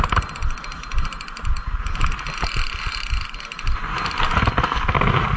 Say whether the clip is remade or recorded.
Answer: recorded